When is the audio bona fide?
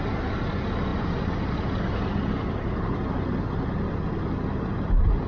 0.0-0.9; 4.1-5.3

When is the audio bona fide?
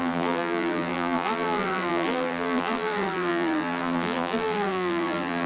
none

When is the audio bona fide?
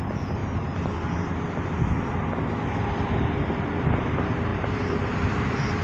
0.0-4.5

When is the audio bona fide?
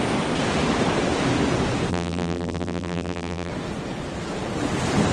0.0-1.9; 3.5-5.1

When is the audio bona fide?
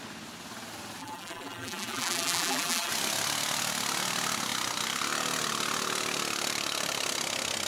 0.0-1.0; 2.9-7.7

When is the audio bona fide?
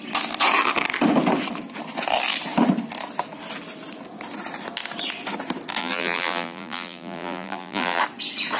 0.0-5.8; 8.0-8.6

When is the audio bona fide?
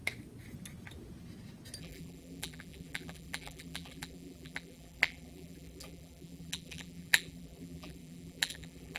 0.0-1.8